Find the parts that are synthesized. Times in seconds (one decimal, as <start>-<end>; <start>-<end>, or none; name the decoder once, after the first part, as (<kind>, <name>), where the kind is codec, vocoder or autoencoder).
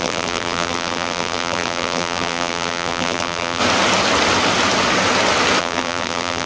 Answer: 0.0-3.6 (vocoder, BigVGAN v2); 5.6-6.5